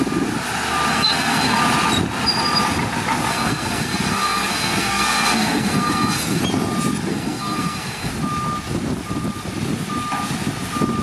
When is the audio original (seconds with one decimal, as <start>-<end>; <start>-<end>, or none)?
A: 0.0-0.9; 1.6-3.3; 6.4-7.1; 8.1-11.0